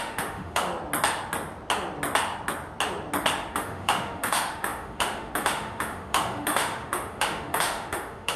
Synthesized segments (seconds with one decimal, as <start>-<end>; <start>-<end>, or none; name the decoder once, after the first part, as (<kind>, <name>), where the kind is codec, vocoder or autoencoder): 0.0-0.7 (autoencoder, DAC-VAE); 3.5-8.4